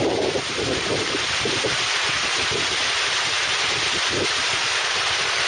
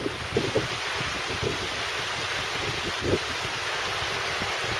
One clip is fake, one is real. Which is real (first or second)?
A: second